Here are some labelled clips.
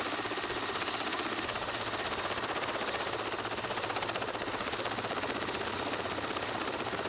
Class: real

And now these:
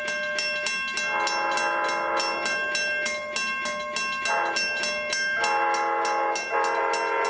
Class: real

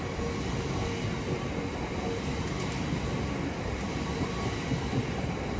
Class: real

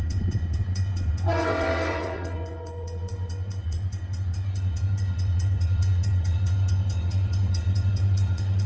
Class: fake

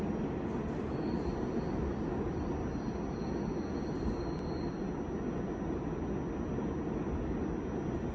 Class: real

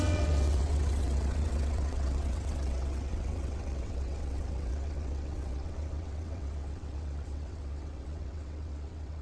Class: fake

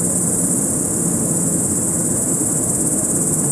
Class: real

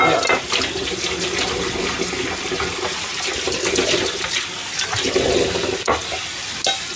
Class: real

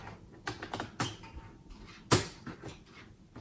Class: real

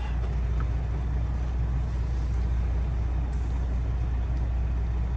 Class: real